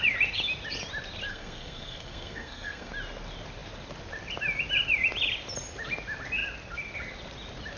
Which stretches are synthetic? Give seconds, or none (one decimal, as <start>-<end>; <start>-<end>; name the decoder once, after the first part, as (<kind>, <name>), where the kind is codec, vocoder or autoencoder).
1.3-2.9 (codec, SNAC)